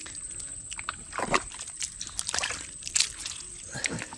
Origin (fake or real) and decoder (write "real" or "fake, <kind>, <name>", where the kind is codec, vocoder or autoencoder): real